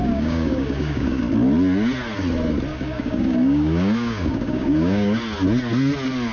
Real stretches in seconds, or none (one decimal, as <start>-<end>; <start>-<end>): 1.2-2.7; 5.2-6.3